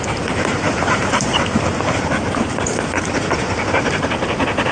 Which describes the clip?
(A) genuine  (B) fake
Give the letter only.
A